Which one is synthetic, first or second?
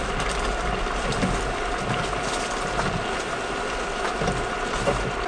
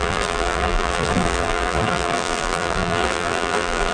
second